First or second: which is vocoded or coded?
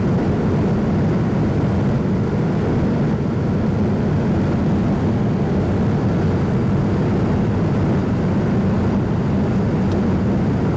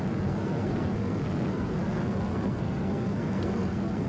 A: second